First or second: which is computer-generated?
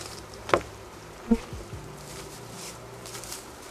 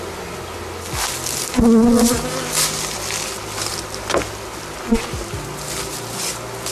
first